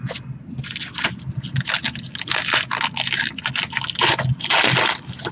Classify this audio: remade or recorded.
recorded